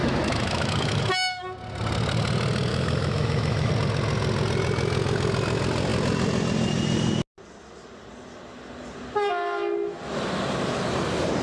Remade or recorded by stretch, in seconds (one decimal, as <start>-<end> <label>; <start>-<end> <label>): 0.0-1.0 remade; 1.0-2.7 recorded; 2.7-3.7 remade; 3.7-11.4 recorded